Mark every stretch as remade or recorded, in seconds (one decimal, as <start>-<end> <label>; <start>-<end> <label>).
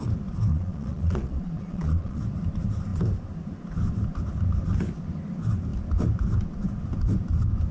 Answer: 0.0-0.5 recorded; 0.5-2.2 remade; 2.2-7.7 recorded